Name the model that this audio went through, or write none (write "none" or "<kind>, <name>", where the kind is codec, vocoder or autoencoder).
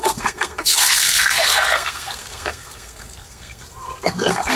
codec, SNAC